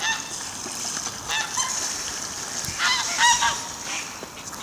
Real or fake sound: real